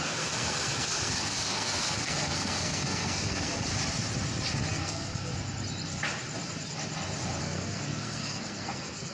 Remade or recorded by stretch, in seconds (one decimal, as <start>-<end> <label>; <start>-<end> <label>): 0.0-3.7 remade; 3.7-4.7 recorded; 4.7-5.3 remade; 5.3-7.4 recorded; 7.4-9.1 remade